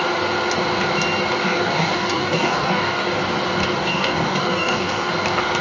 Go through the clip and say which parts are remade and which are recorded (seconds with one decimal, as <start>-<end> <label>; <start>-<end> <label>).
0.0-1.4 recorded; 1.4-3.2 remade; 3.2-3.6 recorded; 3.6-5.1 remade; 5.1-5.6 recorded